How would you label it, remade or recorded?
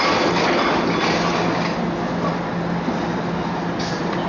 recorded